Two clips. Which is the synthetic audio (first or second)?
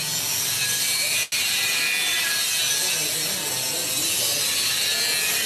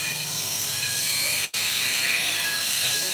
second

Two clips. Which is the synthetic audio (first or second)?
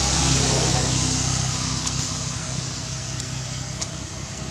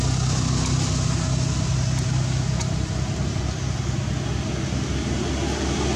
first